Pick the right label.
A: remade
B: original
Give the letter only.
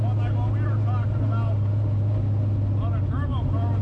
B